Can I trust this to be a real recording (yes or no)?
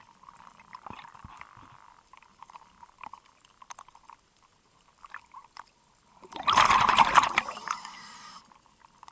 yes